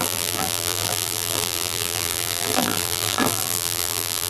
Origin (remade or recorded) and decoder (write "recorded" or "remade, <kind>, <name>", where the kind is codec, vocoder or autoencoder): remade, vocoder, BigVGAN v2